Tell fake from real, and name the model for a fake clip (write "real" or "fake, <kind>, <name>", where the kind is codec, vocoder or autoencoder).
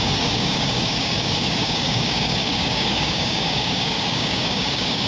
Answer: fake, codec, DAC